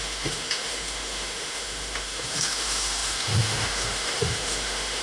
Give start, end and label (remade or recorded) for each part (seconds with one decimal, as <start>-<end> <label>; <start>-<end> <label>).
0.0-5.0 remade